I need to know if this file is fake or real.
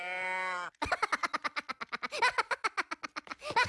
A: real